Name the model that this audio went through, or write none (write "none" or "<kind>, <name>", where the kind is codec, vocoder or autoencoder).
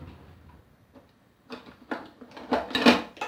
none